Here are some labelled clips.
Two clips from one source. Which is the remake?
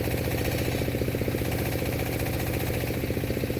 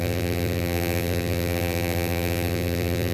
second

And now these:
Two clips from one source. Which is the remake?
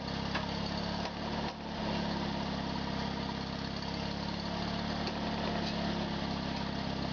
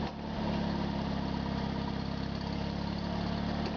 second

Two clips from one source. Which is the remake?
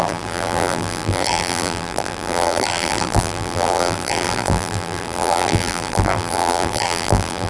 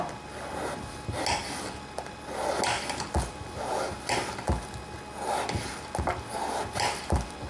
first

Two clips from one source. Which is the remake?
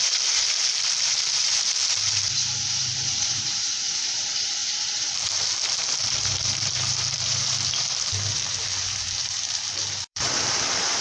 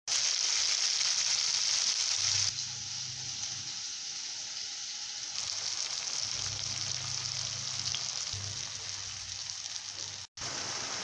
first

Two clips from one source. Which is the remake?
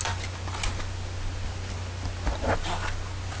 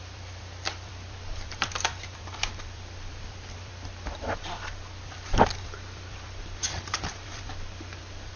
second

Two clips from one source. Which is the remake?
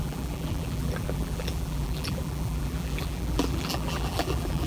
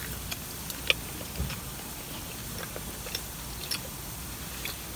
first